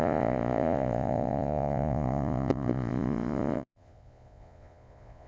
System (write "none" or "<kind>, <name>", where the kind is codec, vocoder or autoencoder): vocoder, Vocos